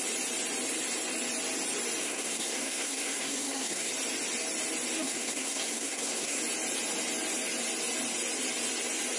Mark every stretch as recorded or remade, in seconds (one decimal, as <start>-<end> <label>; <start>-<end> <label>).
0.0-2.0 recorded; 2.0-3.9 remade; 3.9-5.0 recorded; 5.0-6.4 remade; 6.4-9.2 recorded